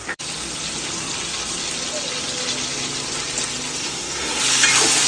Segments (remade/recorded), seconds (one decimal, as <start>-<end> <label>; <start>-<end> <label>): 0.0-3.8 recorded; 3.8-4.4 remade; 4.4-5.1 recorded